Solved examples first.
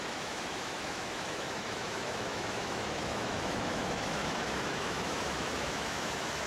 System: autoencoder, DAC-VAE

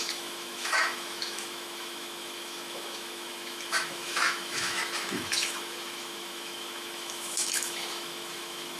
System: autoencoder, DAC-VAE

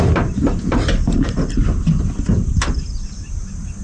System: none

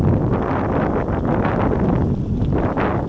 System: none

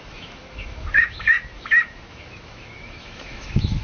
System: autoencoder, DAC-VAE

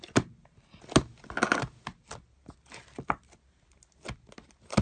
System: none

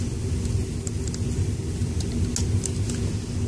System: none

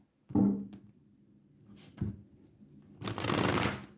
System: none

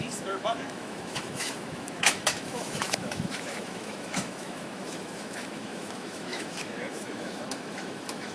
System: autoencoder, DAC-VAE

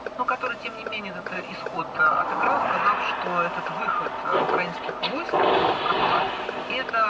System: none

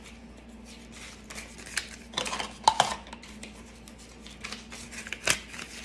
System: none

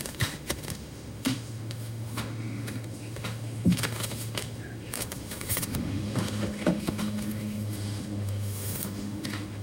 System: autoencoder, DAC-VAE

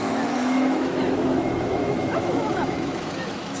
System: autoencoder, DAC-VAE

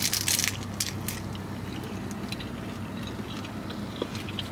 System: none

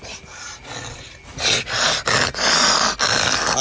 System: none